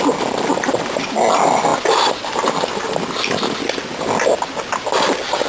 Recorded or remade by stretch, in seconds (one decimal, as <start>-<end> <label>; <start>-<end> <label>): 0.0-5.5 recorded